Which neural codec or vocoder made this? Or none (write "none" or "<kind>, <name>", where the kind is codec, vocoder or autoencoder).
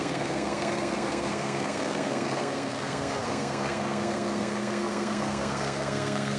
codec, SNAC